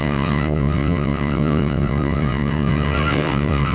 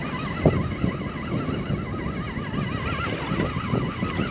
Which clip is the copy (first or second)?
first